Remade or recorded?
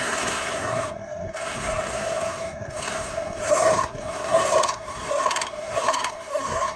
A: remade